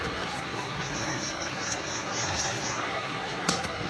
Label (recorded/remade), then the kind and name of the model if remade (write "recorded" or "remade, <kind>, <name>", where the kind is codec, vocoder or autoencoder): remade, codec, SNAC